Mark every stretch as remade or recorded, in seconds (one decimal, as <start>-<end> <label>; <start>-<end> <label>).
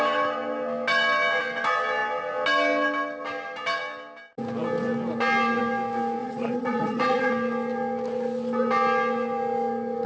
0.0-6.2 recorded; 6.2-7.3 remade; 7.3-10.1 recorded